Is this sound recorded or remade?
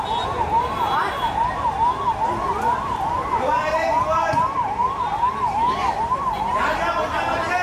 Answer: recorded